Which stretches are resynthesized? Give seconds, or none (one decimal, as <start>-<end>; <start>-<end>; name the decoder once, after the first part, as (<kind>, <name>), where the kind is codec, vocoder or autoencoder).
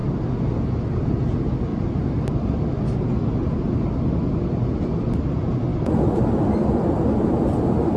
0.0-1.1 (vocoder, BigVGAN v2); 5.7-7.2